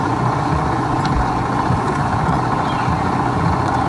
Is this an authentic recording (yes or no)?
no